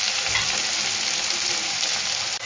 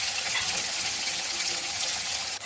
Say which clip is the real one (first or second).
first